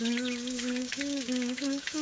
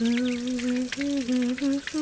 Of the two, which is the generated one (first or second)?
first